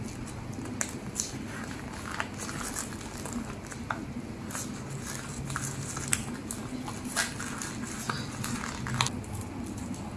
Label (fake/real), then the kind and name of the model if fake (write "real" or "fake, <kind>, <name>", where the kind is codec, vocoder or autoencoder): real